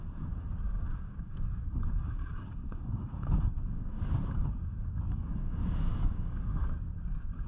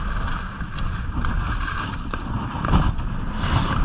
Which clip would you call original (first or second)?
second